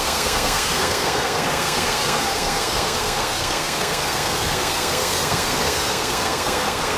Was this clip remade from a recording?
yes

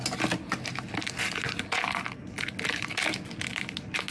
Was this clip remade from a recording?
no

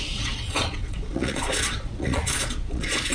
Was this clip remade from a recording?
yes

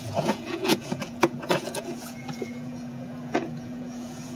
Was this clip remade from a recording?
yes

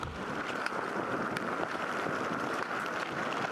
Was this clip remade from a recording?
no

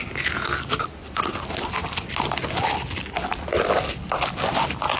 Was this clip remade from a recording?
no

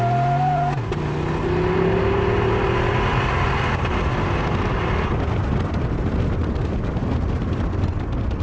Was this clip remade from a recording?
no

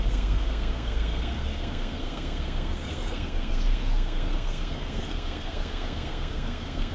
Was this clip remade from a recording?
yes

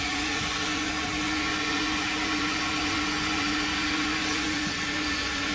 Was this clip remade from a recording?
yes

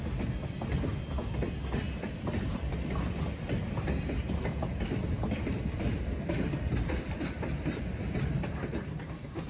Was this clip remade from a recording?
no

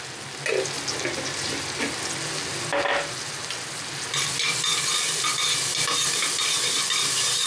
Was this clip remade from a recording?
no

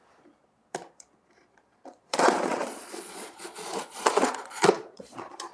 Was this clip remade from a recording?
yes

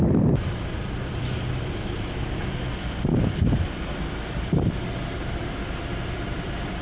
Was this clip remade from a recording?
yes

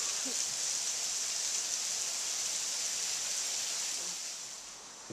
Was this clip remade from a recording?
no